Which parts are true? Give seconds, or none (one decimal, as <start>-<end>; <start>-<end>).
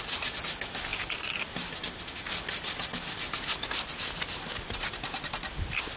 0.0-6.0